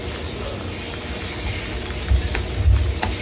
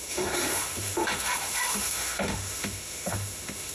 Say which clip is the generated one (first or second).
second